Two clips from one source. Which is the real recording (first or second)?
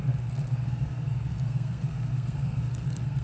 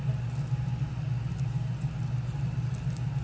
second